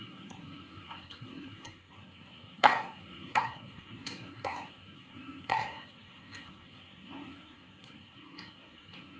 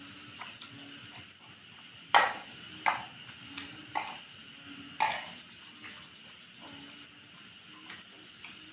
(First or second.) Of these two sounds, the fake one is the first